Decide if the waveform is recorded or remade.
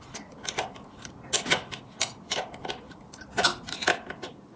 recorded